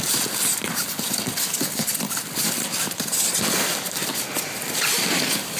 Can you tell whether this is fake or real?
real